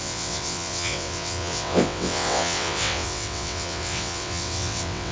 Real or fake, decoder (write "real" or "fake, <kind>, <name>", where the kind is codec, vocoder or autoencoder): fake, vocoder, WaveNeXt